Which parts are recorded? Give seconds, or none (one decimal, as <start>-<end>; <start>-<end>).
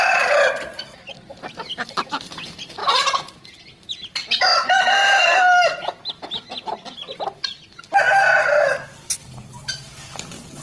0.0-10.6